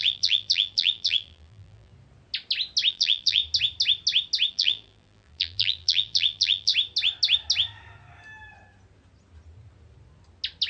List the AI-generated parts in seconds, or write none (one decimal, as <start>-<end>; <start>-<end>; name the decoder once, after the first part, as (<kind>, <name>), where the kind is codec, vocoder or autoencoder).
0.0-1.9 (vocoder, BigVGAN v2); 2.9-3.4; 4.5-6.7